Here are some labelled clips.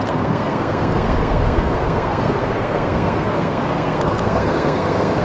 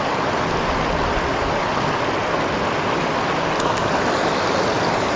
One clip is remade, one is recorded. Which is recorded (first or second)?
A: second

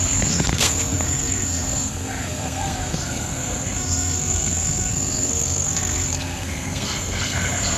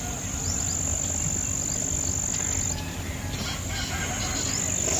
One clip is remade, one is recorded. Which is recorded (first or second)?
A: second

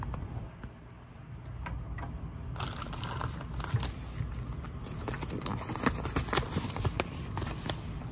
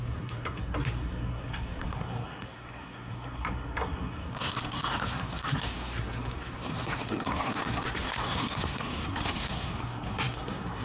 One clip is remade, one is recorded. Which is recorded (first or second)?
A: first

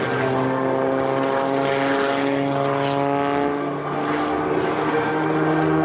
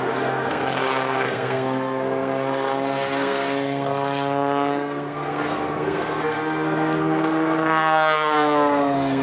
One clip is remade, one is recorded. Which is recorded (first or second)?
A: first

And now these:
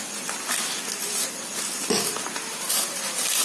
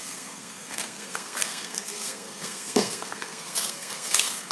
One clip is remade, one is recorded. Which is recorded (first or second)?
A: first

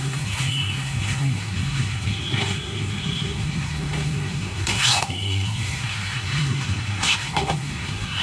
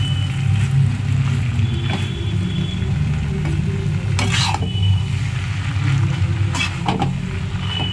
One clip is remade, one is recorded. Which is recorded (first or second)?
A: second